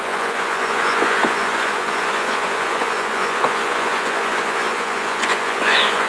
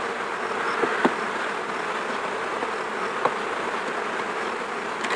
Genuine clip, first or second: second